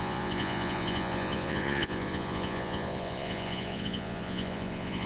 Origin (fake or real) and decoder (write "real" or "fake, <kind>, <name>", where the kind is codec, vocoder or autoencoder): fake, vocoder, Vocos